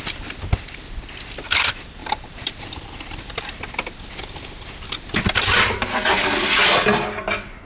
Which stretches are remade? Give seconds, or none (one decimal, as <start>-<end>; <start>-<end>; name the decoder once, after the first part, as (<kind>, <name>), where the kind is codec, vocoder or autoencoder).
2.0-3.6 (vocoder, BigVGAN v2)